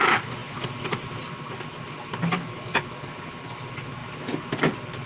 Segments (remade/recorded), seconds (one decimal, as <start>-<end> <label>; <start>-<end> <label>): 0.0-0.4 recorded; 0.4-1.3 remade; 1.3-2.3 recorded; 2.3-3.6 remade; 3.6-4.0 recorded; 4.0-4.6 remade; 4.6-5.1 recorded